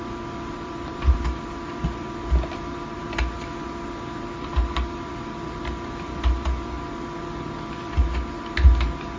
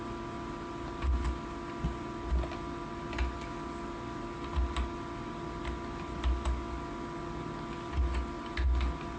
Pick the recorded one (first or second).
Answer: second